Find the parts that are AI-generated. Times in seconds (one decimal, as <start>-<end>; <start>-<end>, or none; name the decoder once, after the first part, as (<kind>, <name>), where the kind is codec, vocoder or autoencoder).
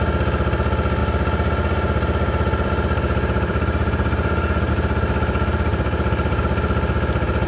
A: 1.0-4.7 (vocoder, BigVGAN v2); 5.7-6.4